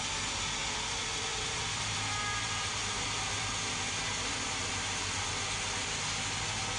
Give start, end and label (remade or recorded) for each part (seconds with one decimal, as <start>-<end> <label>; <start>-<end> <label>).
0.0-1.3 recorded; 1.3-5.4 remade; 5.4-6.8 recorded